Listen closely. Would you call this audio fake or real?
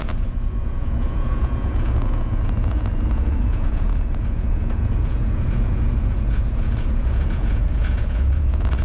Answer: fake